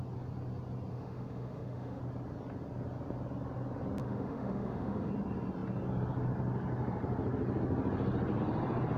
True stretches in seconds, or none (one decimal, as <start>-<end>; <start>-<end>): 0.0-0.9; 2.0-4.0; 5.1-9.0

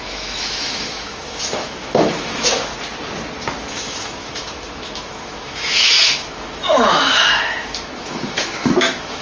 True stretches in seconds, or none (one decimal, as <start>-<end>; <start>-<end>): 2.7-3.7

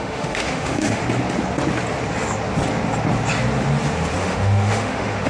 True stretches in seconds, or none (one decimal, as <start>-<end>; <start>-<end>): 1.0-4.2

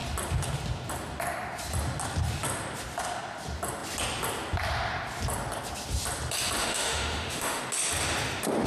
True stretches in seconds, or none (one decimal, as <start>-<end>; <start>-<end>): 0.0-6.6; 7.6-8.7

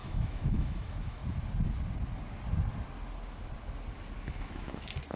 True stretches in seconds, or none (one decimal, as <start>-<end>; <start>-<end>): 1.2-4.3